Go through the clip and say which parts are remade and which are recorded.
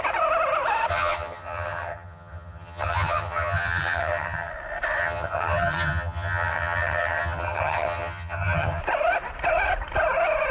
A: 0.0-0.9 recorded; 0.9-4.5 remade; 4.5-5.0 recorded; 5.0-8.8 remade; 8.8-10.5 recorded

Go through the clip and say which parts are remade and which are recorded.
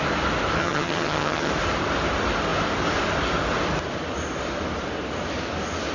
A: 0.0-0.6 recorded; 0.6-1.5 remade; 1.5-5.9 recorded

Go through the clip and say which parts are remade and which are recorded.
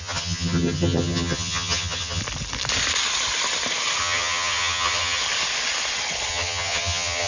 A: 0.0-2.2 remade; 2.2-4.0 recorded; 4.0-5.2 remade; 5.2-6.3 recorded; 6.3-7.3 remade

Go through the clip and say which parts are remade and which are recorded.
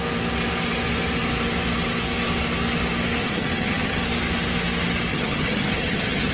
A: 0.0-3.2 recorded; 3.2-4.0 remade; 4.0-5.1 recorded; 5.1-6.3 remade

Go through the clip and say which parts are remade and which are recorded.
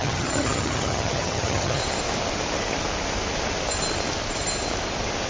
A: 0.0-1.8 remade; 1.8-5.3 recorded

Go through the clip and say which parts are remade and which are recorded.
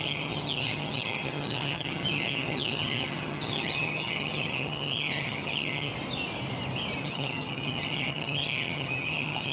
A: 0.0-5.9 remade; 5.9-7.0 recorded; 7.0-9.5 remade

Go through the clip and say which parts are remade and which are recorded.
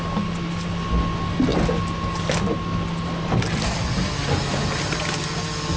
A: 0.0-5.8 recorded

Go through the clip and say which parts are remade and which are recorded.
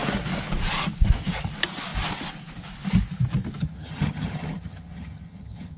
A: 0.0-3.6 recorded; 3.6-5.8 remade